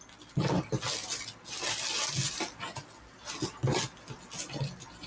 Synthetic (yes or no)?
no